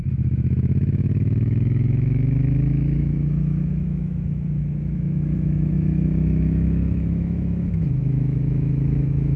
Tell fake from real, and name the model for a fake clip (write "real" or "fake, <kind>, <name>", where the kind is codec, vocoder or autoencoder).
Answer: fake, autoencoder, DAC-VAE